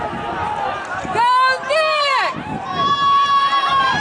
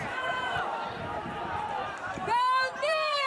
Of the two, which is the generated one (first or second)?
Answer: second